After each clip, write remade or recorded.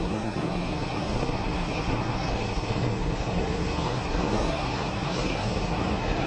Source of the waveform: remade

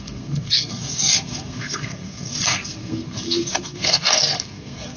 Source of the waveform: remade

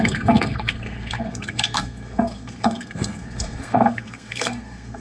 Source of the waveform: remade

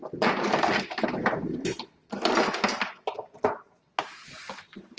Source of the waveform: recorded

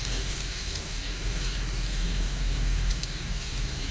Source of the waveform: remade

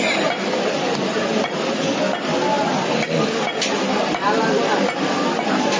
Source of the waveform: recorded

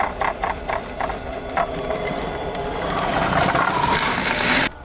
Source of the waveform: recorded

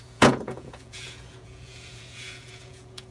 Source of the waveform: remade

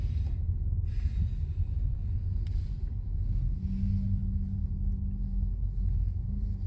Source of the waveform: recorded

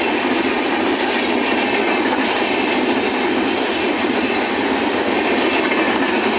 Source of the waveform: recorded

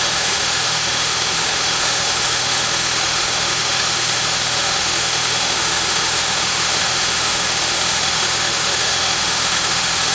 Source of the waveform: remade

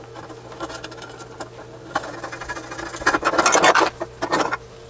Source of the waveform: recorded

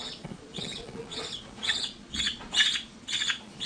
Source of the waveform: remade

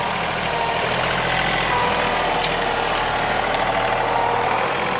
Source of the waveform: recorded